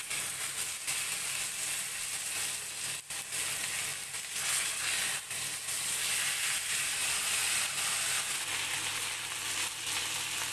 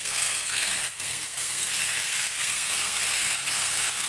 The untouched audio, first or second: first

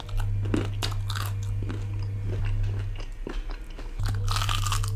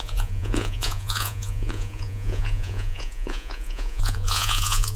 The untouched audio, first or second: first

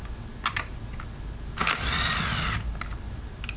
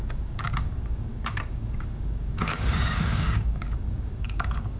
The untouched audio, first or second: first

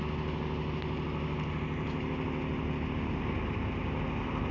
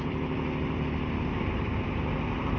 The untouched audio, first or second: first